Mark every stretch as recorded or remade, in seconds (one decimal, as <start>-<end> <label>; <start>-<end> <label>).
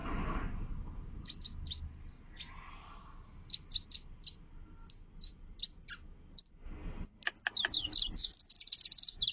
0.0-9.3 recorded